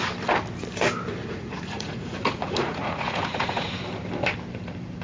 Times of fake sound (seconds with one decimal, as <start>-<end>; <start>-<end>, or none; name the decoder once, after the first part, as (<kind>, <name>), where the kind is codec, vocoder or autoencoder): 1.2-3.8 (vocoder, Vocos)